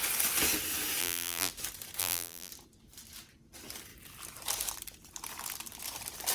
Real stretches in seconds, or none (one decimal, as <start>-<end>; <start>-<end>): 0.0-1.0; 1.5-2.0; 2.5-6.3